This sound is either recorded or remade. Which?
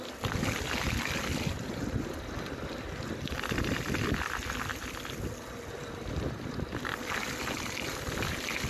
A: recorded